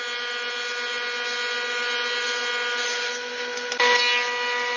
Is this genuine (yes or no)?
yes